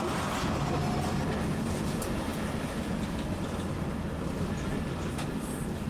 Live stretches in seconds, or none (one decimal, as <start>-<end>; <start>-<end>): 0.0-5.9